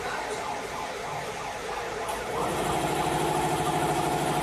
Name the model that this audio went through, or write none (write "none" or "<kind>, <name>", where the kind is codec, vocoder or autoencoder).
none